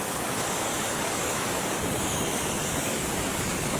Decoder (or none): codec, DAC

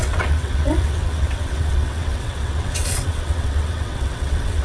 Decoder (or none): vocoder, WaveNeXt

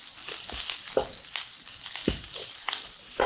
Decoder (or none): none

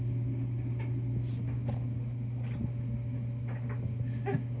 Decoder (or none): none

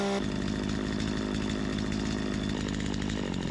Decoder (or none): none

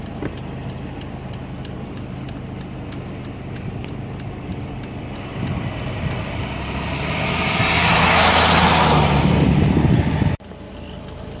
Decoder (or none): none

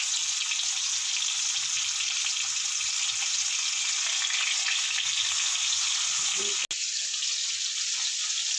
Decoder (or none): none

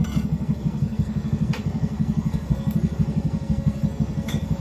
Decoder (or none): codec, SNAC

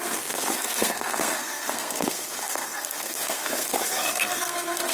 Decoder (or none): codec, SNAC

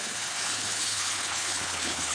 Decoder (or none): codec, HILCodec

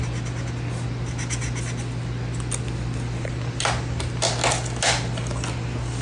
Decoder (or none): none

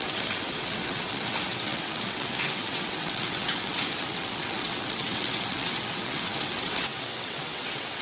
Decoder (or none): vocoder, WaveNeXt